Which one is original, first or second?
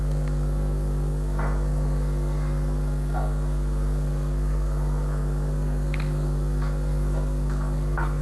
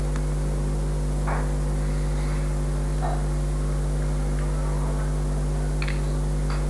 second